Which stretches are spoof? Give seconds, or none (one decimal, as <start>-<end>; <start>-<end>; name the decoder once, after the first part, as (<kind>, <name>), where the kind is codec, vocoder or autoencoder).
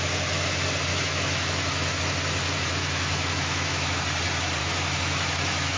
0.9-2.0 (autoencoder, DAC-VAE); 2.8-4.0; 4.6-5.8